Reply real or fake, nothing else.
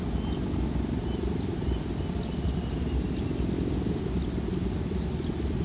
real